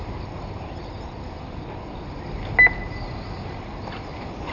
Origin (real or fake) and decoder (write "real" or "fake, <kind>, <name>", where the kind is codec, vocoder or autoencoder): real